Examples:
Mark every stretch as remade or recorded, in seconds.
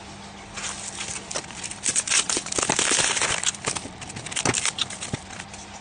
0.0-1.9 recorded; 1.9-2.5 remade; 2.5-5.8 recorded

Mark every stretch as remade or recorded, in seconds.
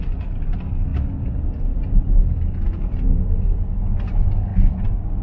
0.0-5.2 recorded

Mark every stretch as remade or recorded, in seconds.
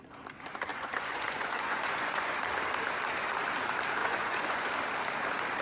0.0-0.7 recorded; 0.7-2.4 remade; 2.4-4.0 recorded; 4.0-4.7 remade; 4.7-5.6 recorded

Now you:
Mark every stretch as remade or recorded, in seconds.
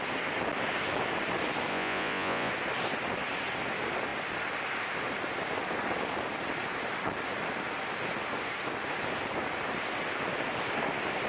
0.0-1.7 recorded; 1.7-2.5 remade; 2.5-11.3 recorded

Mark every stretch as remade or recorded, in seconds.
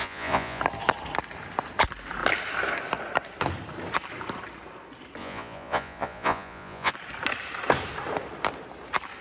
0.0-0.6 remade; 0.6-5.2 recorded; 5.2-6.9 remade; 6.9-9.2 recorded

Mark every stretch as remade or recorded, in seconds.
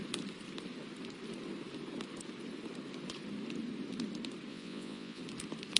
0.0-4.5 recorded; 4.5-5.2 remade; 5.2-5.8 recorded